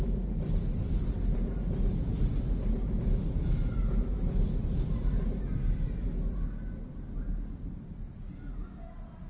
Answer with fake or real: real